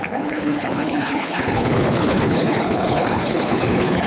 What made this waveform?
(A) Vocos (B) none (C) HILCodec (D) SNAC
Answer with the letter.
C